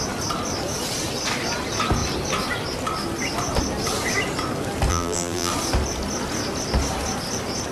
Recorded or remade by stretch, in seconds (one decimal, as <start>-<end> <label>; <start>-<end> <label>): 0.0-4.9 recorded; 4.9-5.5 remade; 5.5-7.7 recorded